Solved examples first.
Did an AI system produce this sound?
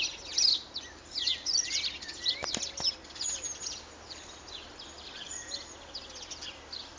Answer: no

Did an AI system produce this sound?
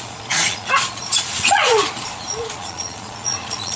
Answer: yes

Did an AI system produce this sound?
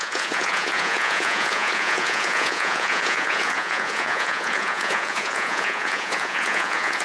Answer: yes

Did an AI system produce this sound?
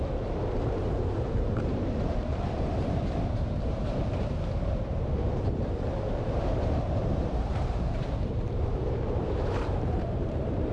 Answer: yes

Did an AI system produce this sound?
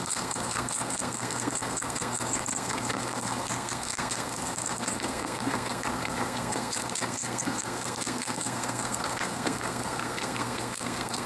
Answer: yes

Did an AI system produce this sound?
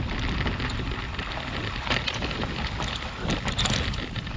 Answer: no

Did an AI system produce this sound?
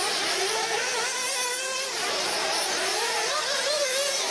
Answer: no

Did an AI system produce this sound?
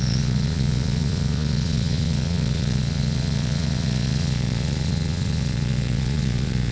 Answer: yes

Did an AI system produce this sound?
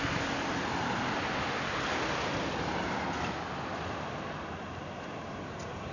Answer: no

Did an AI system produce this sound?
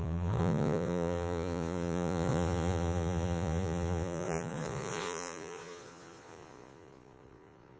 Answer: yes